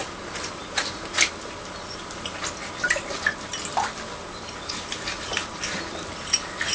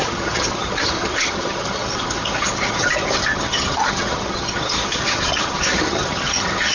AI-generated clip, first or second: second